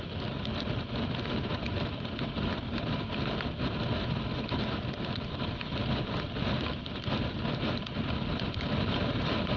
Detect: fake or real real